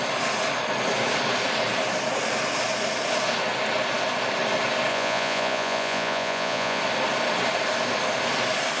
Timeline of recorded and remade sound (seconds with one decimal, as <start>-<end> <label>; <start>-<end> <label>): 0.0-4.9 recorded; 4.9-6.8 remade; 6.8-8.8 recorded